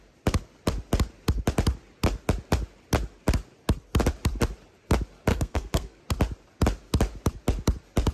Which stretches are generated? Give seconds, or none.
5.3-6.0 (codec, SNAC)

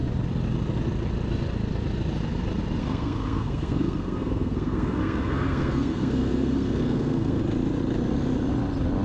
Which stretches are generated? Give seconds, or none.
2.8-7.4 (codec, SNAC)

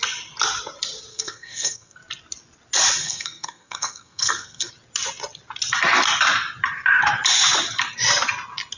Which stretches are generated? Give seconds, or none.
1.1-2.0 (codec, SNAC); 3.0-4.7

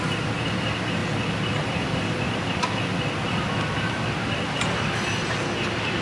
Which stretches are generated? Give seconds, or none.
none

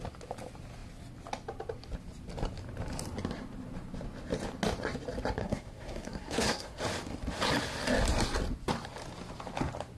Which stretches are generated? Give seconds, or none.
5.4-6.8 (codec, SNAC)

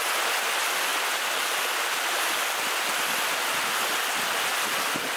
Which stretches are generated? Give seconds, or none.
none